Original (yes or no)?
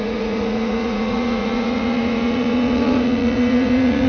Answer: no